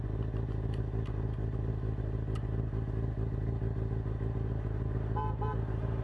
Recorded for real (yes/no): yes